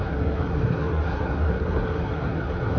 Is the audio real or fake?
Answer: fake